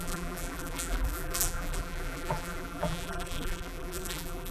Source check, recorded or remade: remade